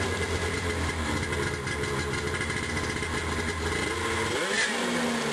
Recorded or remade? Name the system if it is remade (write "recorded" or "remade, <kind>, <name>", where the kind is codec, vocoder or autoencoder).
recorded